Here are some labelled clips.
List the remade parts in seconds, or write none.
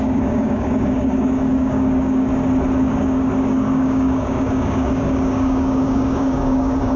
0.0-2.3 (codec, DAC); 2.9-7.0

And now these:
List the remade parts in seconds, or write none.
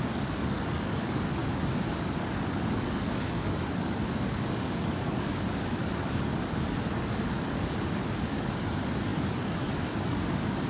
0.0-1.4 (codec, DAC); 1.9-10.7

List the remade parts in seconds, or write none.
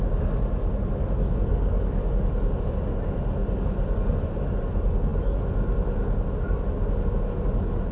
1.5-2.3 (codec, DAC)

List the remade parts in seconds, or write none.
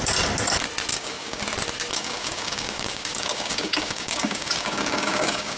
0.9-1.4 (codec, DAC); 1.9-5.6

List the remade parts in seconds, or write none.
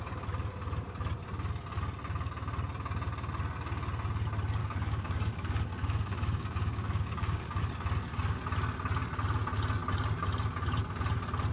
4.6-7.6 (codec, DAC)